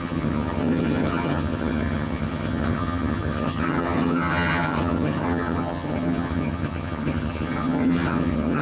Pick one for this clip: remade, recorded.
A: remade